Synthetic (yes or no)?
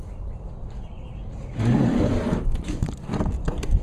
no